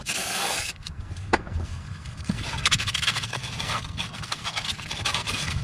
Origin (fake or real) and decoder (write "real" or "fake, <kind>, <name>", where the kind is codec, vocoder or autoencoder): fake, codec, SNAC